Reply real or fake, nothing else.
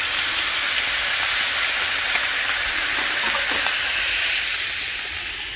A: real